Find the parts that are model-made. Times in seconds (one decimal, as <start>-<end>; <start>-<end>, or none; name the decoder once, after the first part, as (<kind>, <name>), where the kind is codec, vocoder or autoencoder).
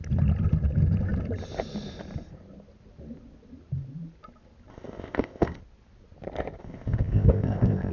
4.7-5.6 (codec, ZipCodec); 6.6-7.9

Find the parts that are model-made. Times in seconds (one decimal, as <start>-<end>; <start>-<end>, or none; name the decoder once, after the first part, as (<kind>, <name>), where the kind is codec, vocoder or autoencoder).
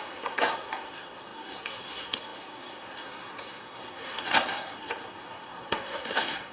0.0-6.5 (codec, SNAC)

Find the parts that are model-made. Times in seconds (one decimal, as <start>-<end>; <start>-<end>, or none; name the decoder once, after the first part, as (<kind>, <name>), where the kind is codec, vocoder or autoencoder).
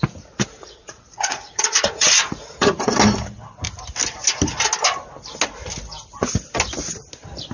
0.8-2.9 (vocoder, Vocos)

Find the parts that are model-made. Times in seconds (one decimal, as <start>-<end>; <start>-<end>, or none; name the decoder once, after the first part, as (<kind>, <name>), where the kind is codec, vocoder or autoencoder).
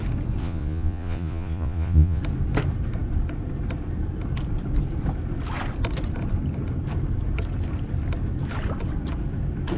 0.4-2.2 (vocoder, Vocos)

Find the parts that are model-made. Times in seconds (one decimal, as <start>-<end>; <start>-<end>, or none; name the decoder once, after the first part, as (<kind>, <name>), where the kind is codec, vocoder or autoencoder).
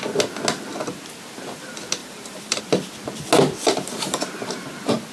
2.0-2.6 (vocoder, BigVGAN v2)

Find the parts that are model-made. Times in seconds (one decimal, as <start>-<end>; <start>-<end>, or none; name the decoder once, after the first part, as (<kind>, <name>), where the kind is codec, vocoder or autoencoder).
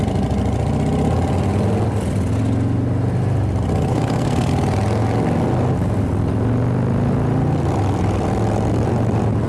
3.9-4.5 (codec, SNAC)